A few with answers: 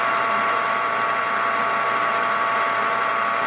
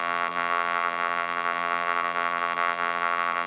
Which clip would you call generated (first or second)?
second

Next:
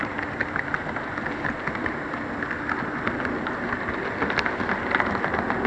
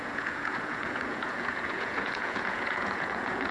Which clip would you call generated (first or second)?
second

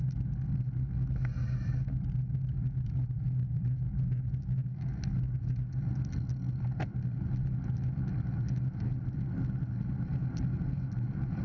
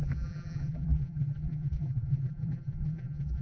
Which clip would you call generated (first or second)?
second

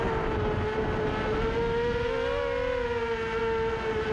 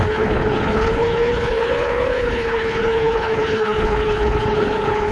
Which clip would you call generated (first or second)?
second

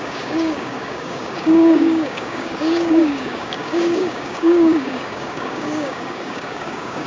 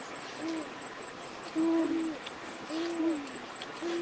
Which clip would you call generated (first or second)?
first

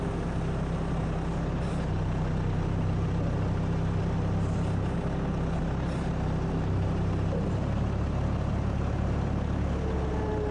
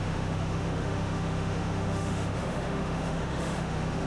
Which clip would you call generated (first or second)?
second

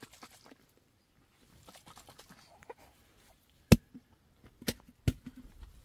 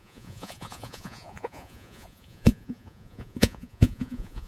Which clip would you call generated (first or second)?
second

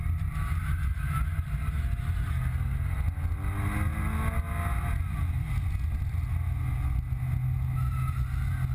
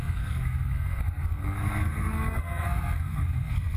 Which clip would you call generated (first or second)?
second